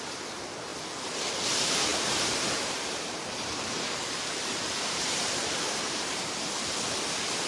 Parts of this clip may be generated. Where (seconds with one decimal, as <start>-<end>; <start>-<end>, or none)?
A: 1.9-6.2